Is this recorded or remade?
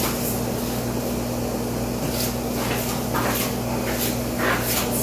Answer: recorded